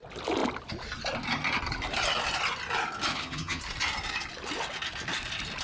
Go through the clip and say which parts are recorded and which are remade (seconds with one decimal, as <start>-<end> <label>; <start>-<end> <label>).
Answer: 0.0-3.1 recorded; 3.1-3.6 remade; 3.6-5.6 recorded